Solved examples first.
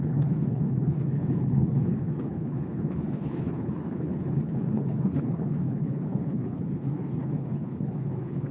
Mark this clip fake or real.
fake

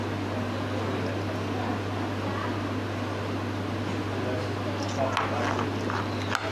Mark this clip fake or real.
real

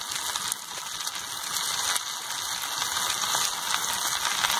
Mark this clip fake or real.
real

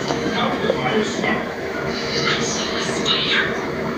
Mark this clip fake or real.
fake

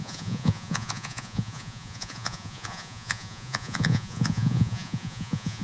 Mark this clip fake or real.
fake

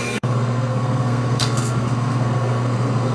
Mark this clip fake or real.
fake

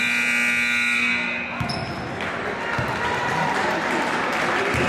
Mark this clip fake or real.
real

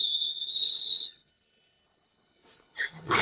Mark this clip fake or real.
fake